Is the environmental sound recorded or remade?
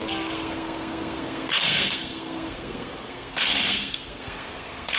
remade